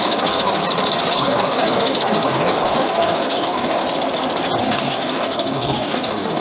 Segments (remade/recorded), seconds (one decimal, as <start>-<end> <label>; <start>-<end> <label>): 0.0-0.6 remade; 0.6-1.1 recorded; 1.1-3.8 remade; 3.8-4.6 recorded; 4.6-6.4 remade